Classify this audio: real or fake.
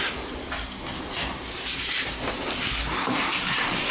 real